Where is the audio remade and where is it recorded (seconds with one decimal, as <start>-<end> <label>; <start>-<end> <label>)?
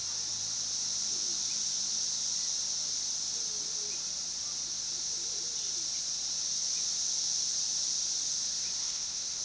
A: 0.0-8.8 recorded; 8.8-9.4 remade